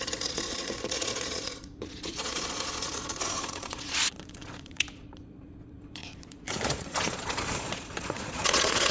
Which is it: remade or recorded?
remade